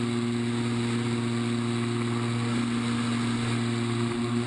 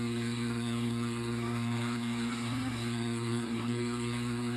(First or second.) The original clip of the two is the first